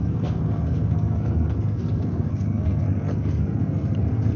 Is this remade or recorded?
remade